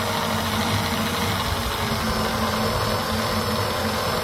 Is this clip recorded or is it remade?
recorded